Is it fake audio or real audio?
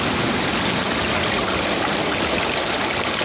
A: real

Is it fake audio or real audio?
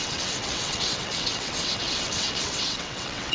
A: fake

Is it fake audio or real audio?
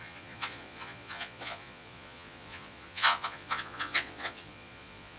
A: fake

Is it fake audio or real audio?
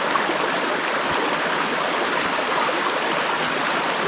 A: real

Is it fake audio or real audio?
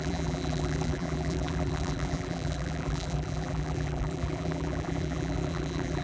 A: fake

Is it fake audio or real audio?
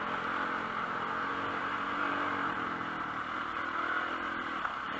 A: real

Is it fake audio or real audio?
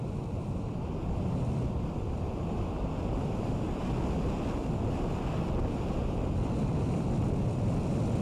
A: real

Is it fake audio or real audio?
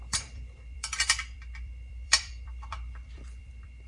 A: fake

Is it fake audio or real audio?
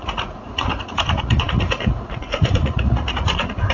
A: fake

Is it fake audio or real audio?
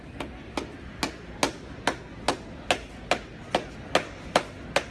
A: real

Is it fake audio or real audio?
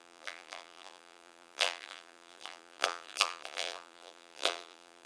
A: fake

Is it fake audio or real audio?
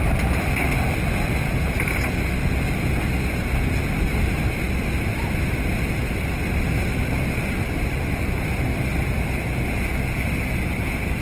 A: real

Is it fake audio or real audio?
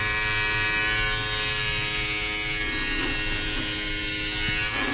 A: real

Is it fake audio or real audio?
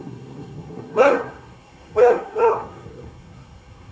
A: fake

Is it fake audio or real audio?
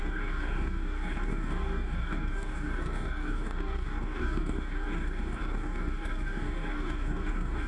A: fake